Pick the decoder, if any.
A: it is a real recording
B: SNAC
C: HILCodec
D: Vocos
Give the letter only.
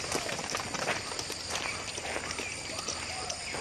A